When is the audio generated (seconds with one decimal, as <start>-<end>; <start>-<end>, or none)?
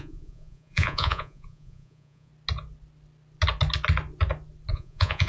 0.0-2.3; 4.7-5.3